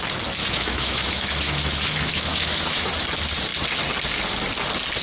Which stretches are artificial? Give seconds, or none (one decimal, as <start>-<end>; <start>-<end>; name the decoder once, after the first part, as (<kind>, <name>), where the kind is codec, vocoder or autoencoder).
0.4-2.9 (autoencoder, DAC-VAE)